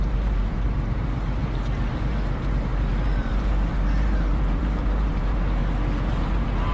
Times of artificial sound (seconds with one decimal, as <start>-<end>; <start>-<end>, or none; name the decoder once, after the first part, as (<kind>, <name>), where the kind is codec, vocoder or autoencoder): 0.0-5.6 (vocoder, BigVGAN v2); 6.1-6.7